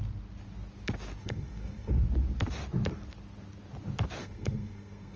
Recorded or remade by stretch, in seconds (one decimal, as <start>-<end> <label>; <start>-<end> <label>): 0.0-1.2 recorded; 1.2-1.9 remade; 1.9-4.2 recorded; 4.2-5.2 remade